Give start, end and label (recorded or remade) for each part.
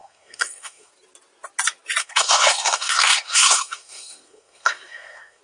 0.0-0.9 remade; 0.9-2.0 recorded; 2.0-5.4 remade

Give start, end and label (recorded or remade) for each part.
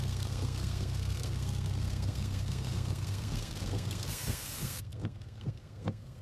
0.0-6.2 remade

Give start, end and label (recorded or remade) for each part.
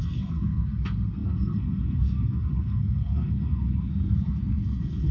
0.0-5.1 remade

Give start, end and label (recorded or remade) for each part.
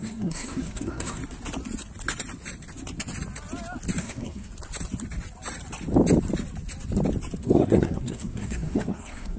0.0-1.2 remade; 1.2-4.0 recorded; 4.0-4.5 remade; 4.5-7.4 recorded; 7.4-9.4 remade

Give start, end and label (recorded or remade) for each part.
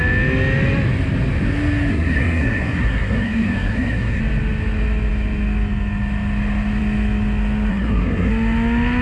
0.0-1.9 recorded; 1.9-4.2 remade; 4.2-7.7 recorded; 7.7-8.3 remade; 8.3-9.0 recorded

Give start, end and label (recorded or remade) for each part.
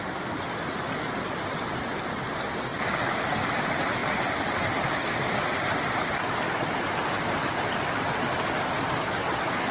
0.0-9.7 recorded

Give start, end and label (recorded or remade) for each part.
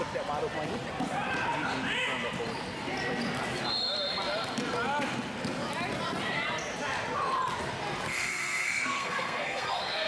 0.0-8.1 recorded; 8.1-10.1 remade